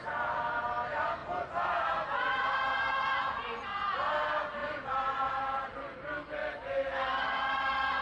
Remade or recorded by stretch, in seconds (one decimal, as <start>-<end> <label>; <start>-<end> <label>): 0.0-1.2 recorded; 1.2-4.1 remade; 4.1-4.6 recorded; 4.6-5.4 remade; 5.4-8.0 recorded